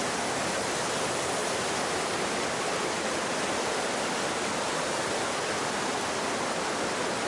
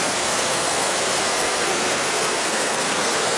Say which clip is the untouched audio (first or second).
first